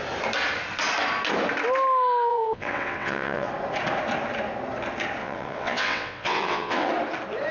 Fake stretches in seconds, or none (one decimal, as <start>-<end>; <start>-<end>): 2.3-3.5; 5.2-6.9